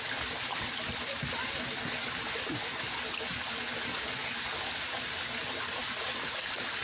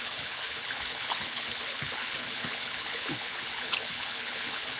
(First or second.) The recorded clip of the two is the first